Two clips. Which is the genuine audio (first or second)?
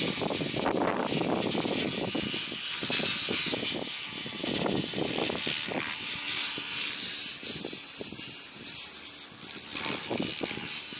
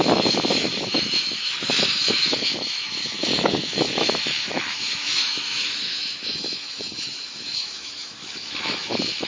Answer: first